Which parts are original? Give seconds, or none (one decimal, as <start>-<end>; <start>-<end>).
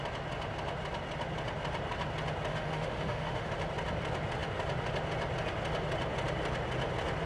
0.0-2.5; 3.5-7.3